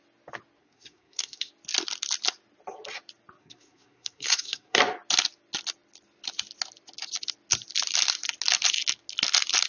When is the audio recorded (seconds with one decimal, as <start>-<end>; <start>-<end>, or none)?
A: 0.0-0.6; 1.5-3.4; 4.8-9.7